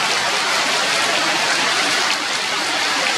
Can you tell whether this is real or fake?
fake